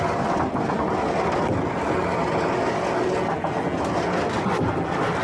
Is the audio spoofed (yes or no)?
no